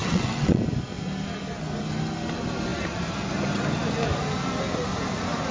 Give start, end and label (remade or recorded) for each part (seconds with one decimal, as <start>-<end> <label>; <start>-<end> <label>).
0.0-0.6 remade; 0.6-5.5 recorded